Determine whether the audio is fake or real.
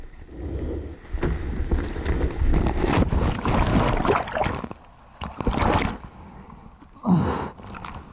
real